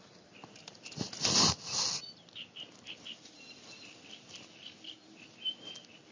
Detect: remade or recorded recorded